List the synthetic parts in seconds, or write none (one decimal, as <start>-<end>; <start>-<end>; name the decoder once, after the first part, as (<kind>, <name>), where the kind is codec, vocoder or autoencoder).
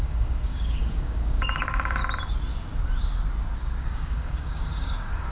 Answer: 0.0-2.0 (codec, DAC); 3.8-5.3